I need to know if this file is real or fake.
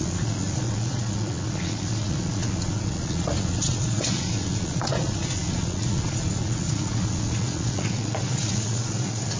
fake